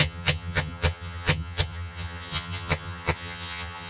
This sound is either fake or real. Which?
fake